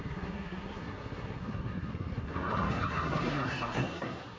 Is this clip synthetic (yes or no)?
yes